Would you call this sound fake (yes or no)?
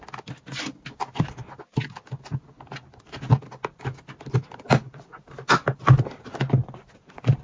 no